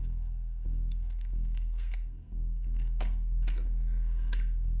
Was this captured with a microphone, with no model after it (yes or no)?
no